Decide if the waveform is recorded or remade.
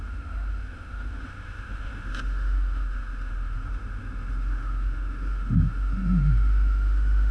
remade